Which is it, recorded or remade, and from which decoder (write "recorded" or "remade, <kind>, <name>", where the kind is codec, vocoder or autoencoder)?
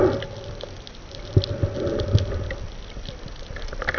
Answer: recorded